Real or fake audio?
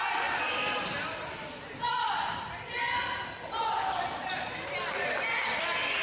real